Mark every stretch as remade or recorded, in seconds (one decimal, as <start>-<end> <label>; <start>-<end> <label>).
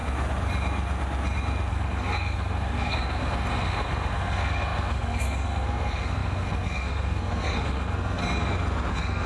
0.0-1.7 recorded; 1.7-8.2 remade; 8.2-8.9 recorded; 8.9-9.3 remade